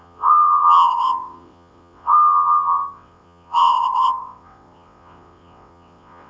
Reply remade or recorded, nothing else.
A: remade